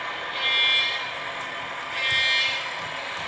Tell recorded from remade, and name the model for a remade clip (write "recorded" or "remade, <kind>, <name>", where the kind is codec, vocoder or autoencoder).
recorded